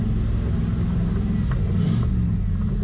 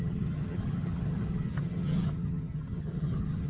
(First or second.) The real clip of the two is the first